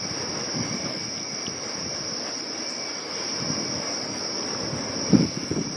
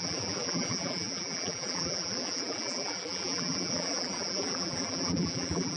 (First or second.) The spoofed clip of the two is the second